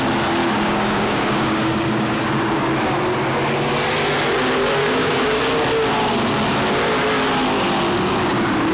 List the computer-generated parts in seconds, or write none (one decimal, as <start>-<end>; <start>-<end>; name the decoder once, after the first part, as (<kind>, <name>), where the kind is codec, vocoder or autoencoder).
0.4-2.6 (codec, DAC); 4.8-5.4